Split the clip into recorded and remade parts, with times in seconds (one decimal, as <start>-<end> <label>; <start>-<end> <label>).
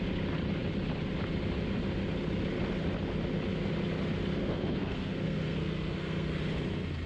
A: 0.0-4.4 recorded; 4.4-6.4 remade; 6.4-7.1 recorded